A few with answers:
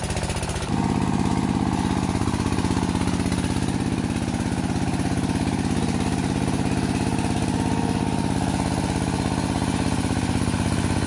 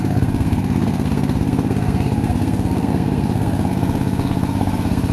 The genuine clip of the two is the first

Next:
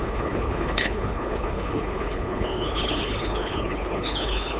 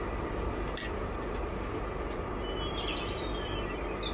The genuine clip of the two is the second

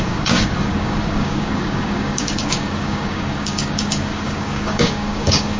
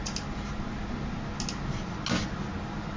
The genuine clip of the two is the second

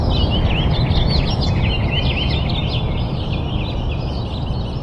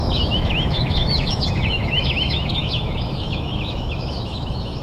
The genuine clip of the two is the first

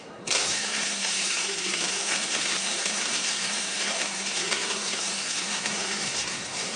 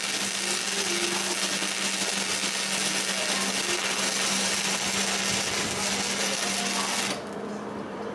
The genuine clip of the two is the second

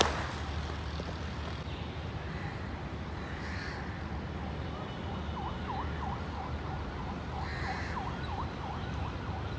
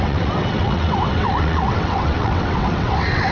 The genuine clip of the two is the first